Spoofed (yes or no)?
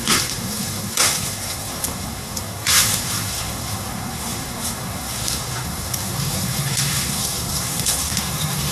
yes